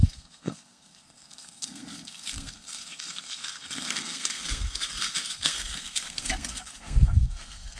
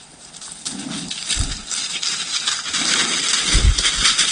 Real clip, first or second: second